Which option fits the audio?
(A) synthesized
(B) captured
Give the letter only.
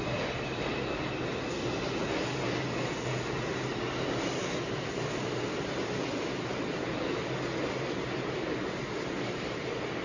B